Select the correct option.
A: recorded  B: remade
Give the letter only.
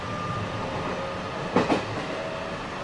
A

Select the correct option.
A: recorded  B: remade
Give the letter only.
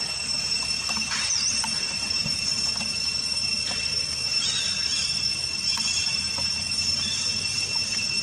A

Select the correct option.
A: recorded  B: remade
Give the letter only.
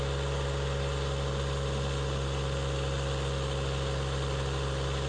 A